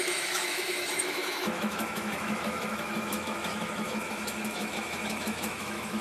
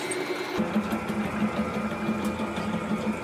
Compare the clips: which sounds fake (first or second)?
first